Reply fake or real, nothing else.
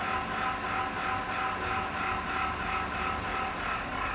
real